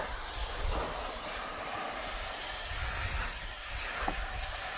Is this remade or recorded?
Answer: recorded